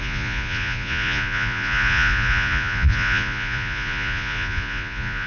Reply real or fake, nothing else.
fake